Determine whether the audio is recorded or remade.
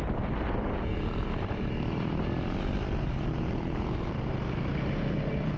recorded